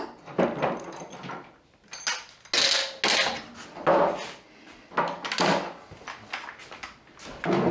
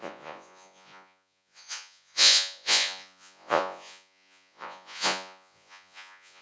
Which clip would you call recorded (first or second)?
first